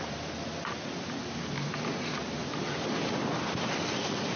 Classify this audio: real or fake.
real